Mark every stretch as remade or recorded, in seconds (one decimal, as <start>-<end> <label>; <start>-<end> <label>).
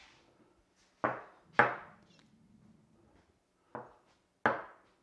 0.0-5.0 recorded